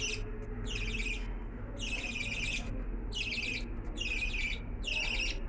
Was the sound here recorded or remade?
recorded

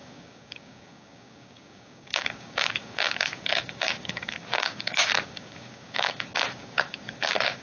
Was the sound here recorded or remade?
remade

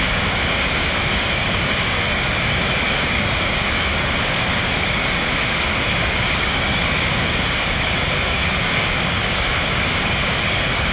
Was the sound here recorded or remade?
remade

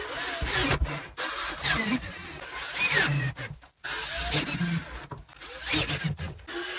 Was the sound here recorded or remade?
recorded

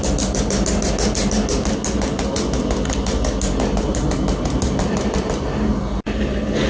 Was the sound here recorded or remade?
recorded